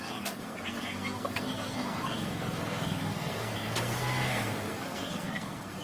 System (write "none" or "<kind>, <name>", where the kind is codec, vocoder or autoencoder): codec, SNAC